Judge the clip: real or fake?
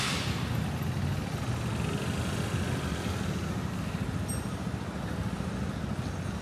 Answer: real